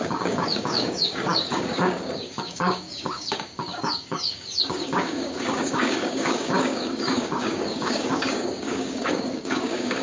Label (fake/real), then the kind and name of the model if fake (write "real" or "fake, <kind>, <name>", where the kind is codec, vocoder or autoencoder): fake, codec, DAC